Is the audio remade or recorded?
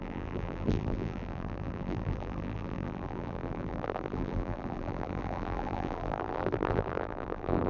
remade